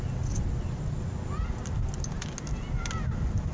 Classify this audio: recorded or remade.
recorded